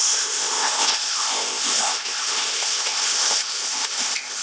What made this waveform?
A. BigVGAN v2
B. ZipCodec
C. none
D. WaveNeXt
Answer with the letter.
B